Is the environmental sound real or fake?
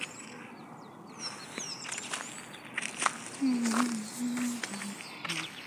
real